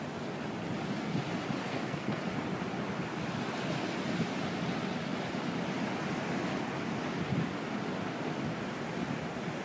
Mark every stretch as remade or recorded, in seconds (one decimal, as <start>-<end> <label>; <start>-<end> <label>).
0.0-1.6 recorded; 1.6-2.2 remade; 2.2-9.6 recorded